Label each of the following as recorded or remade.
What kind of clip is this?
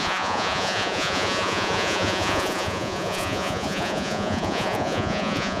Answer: remade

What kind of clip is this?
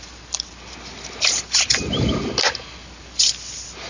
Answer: recorded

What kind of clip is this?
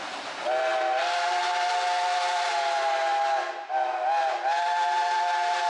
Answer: recorded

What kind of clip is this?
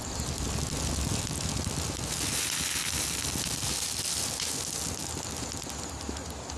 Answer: recorded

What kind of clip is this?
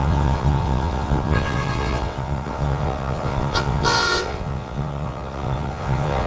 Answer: remade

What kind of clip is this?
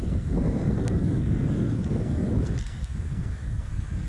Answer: remade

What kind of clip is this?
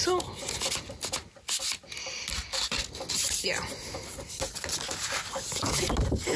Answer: recorded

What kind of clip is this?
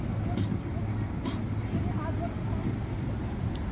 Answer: recorded